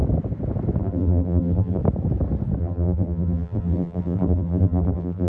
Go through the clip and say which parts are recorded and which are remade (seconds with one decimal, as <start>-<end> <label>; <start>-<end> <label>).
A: 0.0-0.8 recorded; 0.8-1.8 remade; 1.8-2.6 recorded; 2.6-5.3 remade